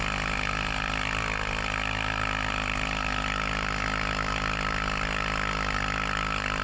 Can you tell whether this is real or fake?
real